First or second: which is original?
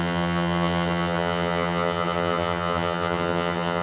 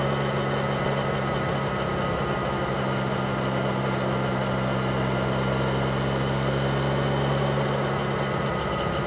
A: second